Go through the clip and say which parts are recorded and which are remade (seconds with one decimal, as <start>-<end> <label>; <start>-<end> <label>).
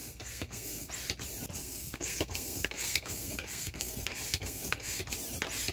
0.0-0.9 remade; 0.9-1.6 recorded; 1.6-5.0 remade; 5.0-5.7 recorded